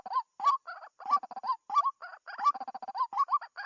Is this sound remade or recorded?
recorded